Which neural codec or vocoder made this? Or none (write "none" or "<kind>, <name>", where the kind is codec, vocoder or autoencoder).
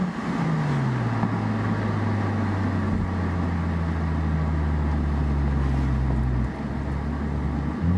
none